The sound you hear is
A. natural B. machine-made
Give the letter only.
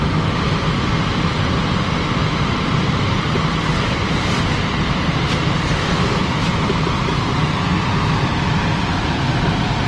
A